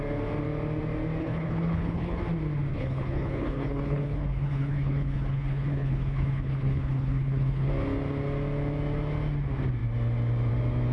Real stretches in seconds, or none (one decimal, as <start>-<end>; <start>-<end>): 0.0-1.2; 2.2-2.7; 7.7-10.9